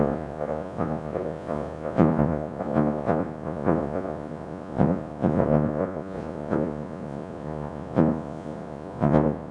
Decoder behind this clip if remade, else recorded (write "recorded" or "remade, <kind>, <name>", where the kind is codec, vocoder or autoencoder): remade, vocoder, Vocos